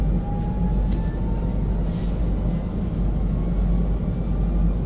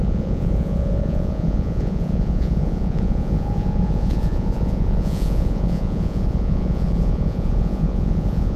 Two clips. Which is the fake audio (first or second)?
second